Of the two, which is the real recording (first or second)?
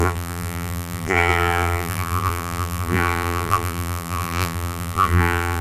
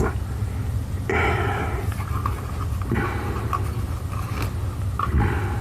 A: second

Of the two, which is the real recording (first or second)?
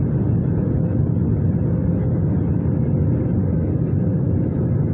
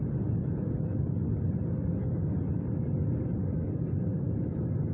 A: first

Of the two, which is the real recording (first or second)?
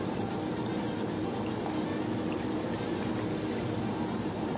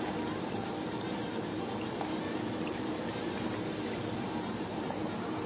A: first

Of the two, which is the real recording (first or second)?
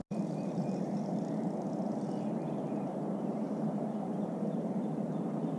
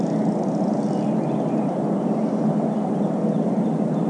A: second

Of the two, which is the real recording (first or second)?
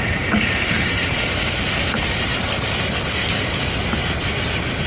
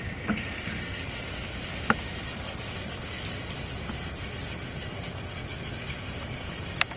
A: second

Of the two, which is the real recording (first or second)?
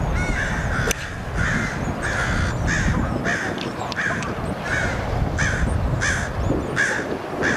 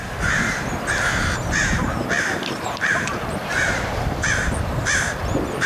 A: first